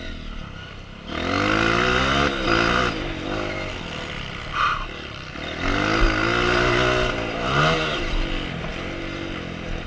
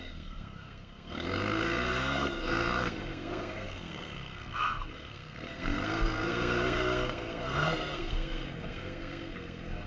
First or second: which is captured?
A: first